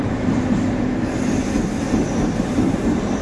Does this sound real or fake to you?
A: real